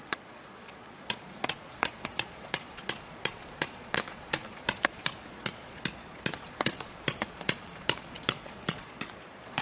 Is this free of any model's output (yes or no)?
no